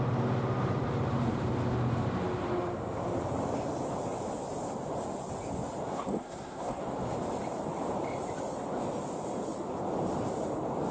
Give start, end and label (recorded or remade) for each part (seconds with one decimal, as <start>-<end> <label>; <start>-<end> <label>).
0.0-5.9 recorded; 5.9-6.8 remade; 6.8-10.9 recorded